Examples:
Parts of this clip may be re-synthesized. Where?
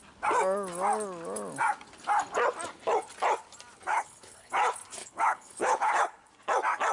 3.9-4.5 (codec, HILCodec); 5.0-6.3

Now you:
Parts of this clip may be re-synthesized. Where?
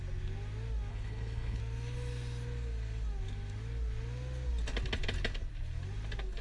0.9-1.6 (codec, HILCodec)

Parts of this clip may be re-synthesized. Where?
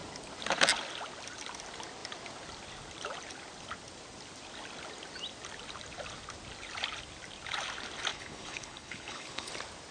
8.1-9.5 (codec, HILCodec)